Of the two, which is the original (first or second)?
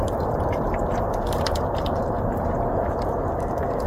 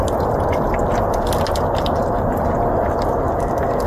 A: second